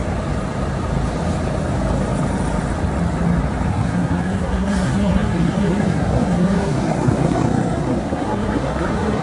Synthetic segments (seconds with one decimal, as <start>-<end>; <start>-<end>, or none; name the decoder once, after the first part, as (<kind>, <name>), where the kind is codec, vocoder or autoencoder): 3.7-9.2 (codec, SNAC)